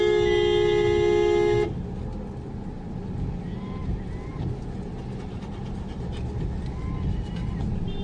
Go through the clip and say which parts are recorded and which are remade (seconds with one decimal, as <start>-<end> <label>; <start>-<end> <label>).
0.0-8.0 recorded